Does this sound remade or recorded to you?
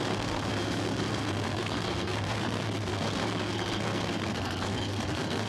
remade